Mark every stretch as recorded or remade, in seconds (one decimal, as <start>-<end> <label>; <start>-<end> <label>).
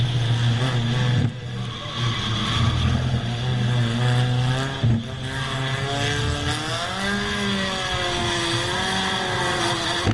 0.0-10.1 recorded